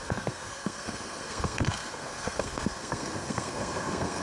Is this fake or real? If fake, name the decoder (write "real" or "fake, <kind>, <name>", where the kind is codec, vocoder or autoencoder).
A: fake, codec, SNAC